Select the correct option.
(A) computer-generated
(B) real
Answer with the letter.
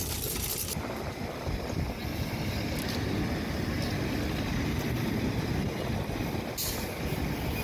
B